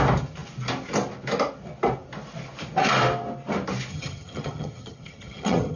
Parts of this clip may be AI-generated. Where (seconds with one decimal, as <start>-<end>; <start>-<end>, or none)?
3.9-5.8